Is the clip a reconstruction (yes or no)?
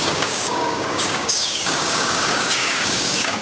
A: yes